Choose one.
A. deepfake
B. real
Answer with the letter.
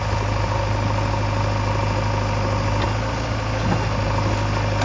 B